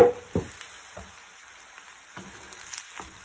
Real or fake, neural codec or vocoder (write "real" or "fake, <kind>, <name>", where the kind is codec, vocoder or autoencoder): real